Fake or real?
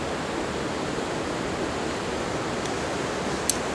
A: real